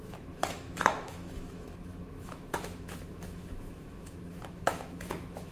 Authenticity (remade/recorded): remade